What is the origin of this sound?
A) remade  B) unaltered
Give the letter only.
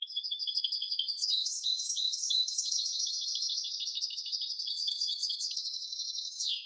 A